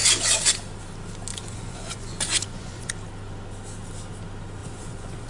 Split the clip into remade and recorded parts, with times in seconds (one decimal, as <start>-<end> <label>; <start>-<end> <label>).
0.0-1.3 recorded; 1.3-2.9 remade; 2.9-4.6 recorded; 4.6-5.3 remade